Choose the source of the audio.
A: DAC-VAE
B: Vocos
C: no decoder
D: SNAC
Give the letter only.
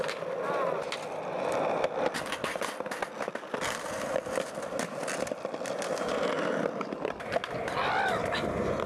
C